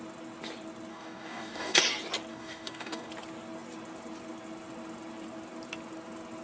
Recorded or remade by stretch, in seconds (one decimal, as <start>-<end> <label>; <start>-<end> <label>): 0.0-0.9 recorded; 0.9-1.8 remade; 1.8-2.3 recorded; 2.3-3.1 remade; 3.1-6.4 recorded